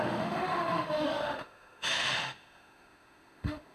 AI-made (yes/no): yes